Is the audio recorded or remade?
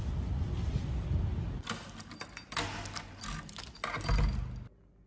recorded